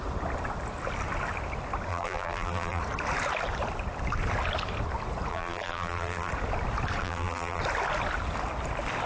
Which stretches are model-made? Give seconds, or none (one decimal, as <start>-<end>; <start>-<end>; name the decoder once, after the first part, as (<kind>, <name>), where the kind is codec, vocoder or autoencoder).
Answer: 1.9-2.8 (vocoder, BigVGAN v2); 5.3-6.3; 7.0-7.6